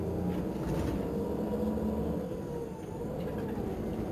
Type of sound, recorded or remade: recorded